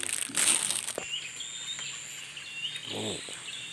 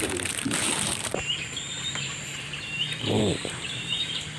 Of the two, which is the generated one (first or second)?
second